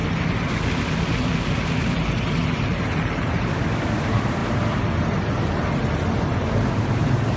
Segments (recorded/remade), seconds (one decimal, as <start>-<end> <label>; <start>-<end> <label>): 0.0-7.4 recorded